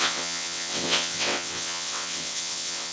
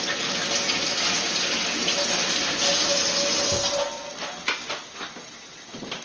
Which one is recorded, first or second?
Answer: second